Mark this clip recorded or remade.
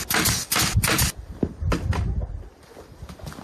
recorded